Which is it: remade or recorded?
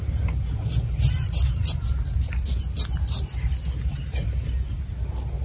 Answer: recorded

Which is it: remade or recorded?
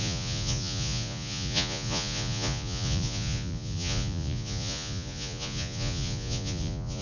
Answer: remade